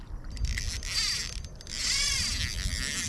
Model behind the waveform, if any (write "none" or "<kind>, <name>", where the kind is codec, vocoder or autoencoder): none